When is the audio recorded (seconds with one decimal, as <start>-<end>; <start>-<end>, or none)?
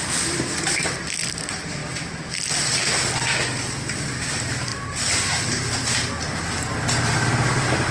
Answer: 0.0-7.9